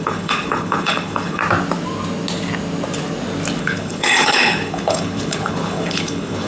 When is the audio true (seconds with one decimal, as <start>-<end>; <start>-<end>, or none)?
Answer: 1.4-3.6